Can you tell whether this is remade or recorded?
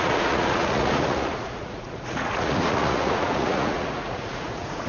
remade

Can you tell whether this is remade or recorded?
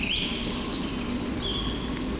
recorded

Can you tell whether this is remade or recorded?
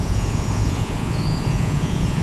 remade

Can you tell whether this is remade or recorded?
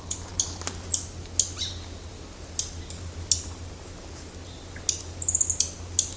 recorded